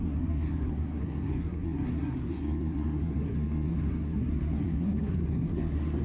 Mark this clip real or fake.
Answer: fake